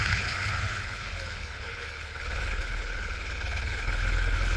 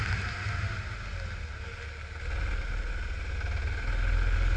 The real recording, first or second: second